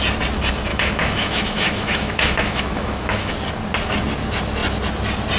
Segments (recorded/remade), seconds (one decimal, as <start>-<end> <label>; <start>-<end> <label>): 0.0-0.7 recorded; 0.7-3.3 remade; 3.3-5.4 recorded